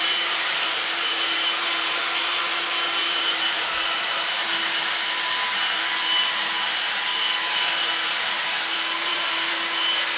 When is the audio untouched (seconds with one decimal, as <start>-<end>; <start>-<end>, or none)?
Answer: 2.5-3.1